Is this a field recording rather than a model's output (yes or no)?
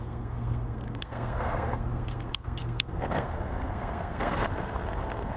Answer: no